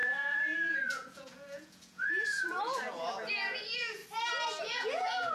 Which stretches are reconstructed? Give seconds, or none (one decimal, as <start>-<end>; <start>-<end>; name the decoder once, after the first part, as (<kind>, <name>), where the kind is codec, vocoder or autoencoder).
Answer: 0.0-4.0 (vocoder, Vocos); 4.6-5.3